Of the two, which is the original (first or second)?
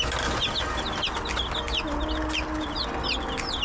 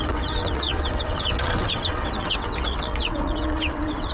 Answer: first